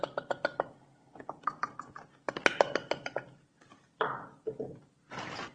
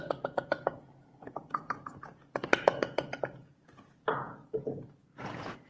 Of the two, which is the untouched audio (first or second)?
first